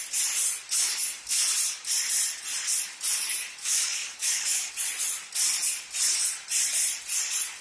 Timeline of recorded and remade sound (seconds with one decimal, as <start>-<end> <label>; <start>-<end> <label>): 0.0-3.6 recorded; 3.6-4.7 remade; 4.7-7.6 recorded